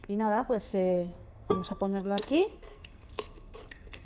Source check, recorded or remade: remade